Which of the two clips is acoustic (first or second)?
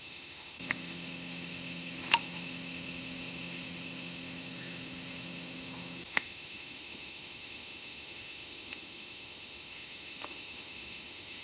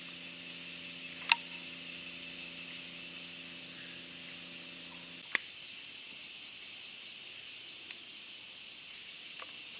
second